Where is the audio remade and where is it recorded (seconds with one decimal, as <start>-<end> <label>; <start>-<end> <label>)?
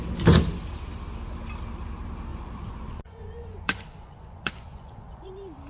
0.0-2.3 recorded; 2.3-5.3 remade; 5.3-5.7 recorded